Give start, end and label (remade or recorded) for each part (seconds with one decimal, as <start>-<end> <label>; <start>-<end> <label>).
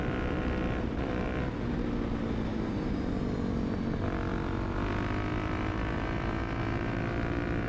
0.0-2.5 recorded; 2.5-3.1 remade; 3.1-5.7 recorded; 5.7-7.0 remade; 7.0-7.7 recorded